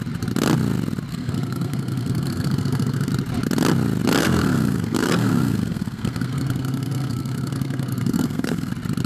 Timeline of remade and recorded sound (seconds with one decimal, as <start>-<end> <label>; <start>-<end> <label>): 0.0-1.1 recorded; 1.1-3.1 remade; 3.1-4.2 recorded; 4.2-8.7 remade; 8.7-9.1 recorded